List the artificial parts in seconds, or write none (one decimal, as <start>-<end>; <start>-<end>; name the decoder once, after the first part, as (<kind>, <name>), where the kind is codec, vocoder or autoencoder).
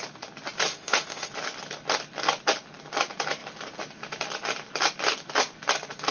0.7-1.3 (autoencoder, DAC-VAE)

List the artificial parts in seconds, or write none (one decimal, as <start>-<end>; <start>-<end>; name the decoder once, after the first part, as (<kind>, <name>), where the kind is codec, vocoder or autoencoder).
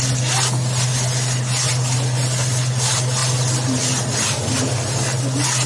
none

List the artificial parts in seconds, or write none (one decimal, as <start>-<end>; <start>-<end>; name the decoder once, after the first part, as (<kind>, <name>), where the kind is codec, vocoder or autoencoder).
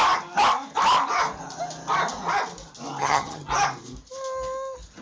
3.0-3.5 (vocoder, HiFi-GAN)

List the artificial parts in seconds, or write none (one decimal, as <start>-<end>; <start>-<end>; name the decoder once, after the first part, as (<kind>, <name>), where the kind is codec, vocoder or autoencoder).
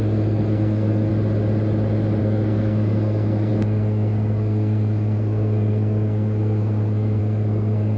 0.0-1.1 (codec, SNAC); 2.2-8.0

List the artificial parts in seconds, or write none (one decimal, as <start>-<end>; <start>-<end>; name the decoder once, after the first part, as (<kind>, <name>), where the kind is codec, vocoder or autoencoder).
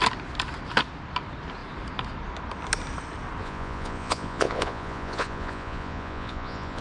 3.4-6.8 (vocoder, Vocos)